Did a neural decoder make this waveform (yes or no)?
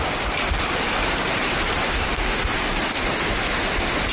no